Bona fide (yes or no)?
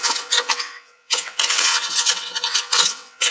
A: no